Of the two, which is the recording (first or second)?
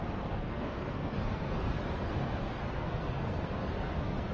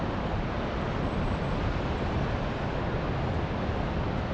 second